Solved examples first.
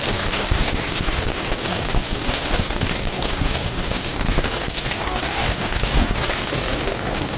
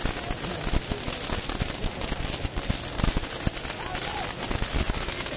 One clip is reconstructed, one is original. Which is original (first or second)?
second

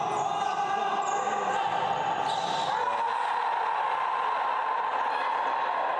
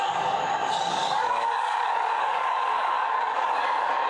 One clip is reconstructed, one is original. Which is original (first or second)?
first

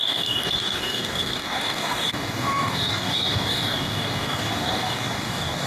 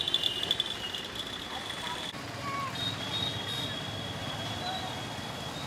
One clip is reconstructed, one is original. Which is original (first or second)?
second